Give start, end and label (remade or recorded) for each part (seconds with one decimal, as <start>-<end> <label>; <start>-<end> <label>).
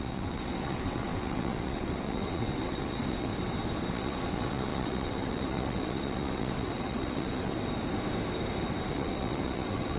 0.0-3.3 remade; 3.3-3.9 recorded; 3.9-7.6 remade; 7.6-8.9 recorded; 8.9-10.0 remade